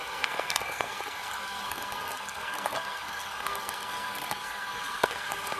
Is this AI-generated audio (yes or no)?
yes